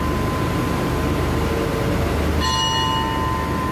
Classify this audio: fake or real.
real